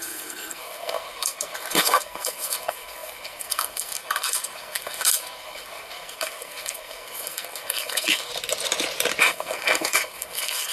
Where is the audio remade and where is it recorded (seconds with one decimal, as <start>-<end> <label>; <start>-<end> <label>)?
0.0-8.3 remade; 8.3-9.2 recorded; 9.2-10.7 remade